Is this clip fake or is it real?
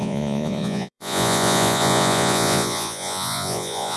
fake